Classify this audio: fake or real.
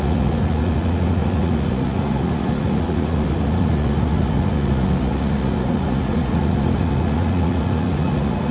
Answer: fake